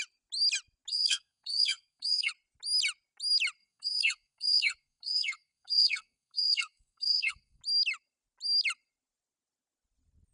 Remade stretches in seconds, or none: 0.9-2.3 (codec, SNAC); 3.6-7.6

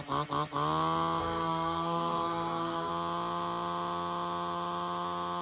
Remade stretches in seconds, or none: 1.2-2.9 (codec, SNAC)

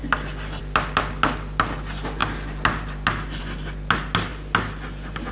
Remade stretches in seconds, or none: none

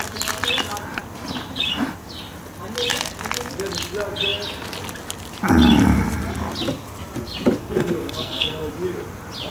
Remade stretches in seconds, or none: 7.6-8.7 (codec, SNAC)

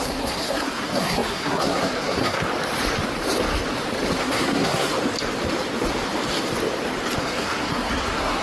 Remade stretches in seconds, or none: 0.0-2.5 (codec, SNAC); 4.2-4.9; 7.2-8.4

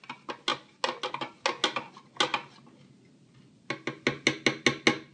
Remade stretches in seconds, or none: none

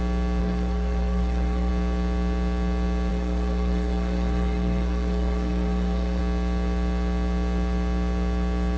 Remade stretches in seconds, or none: 0.4-1.7 (codec, SNAC); 3.1-6.2

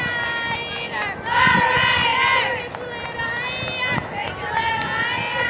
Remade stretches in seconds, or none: none